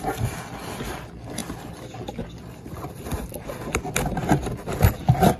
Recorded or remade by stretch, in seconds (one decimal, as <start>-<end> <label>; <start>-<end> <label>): 0.0-1.4 recorded; 1.4-3.5 remade; 3.5-5.4 recorded